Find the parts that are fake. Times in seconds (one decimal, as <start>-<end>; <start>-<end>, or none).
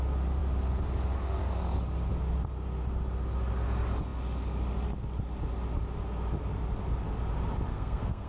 7.7-8.3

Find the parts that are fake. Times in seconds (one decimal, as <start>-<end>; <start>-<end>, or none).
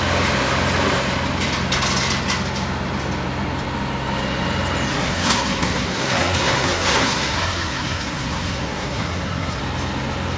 4.9-9.6